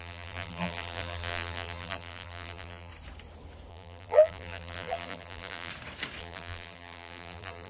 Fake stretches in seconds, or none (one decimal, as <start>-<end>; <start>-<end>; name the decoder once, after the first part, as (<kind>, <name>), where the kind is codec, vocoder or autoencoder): 0.0-2.9 (vocoder, BigVGAN v2); 3.7-5.7; 6.2-7.7